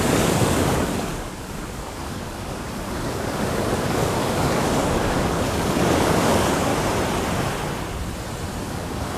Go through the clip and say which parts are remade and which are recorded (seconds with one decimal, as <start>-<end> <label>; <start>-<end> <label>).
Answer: 0.0-6.7 remade; 6.7-8.6 recorded; 8.6-9.2 remade